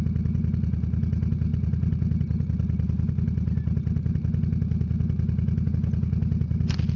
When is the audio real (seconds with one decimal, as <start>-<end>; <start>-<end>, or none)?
0.0-7.0